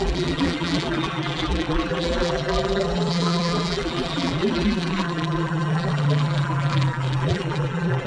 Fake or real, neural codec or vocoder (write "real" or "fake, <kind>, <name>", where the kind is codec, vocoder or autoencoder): fake, vocoder, BigVGAN v2